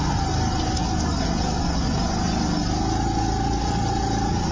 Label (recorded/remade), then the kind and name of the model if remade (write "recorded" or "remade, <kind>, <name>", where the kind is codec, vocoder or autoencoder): recorded